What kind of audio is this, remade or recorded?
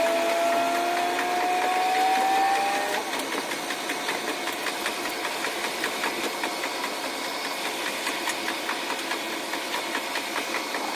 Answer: recorded